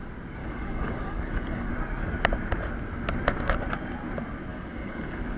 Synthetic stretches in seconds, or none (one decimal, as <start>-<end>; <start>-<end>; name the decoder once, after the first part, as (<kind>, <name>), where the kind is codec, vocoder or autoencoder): 0.4-1.7 (codec, DAC); 4.5-5.4